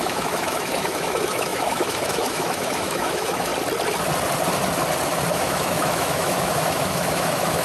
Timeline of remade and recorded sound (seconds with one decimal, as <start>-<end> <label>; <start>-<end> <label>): 0.0-3.5 remade; 3.5-5.3 recorded; 5.3-7.6 remade